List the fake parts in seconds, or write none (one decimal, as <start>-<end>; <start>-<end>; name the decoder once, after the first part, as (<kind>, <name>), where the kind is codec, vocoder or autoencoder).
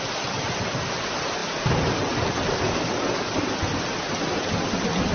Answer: none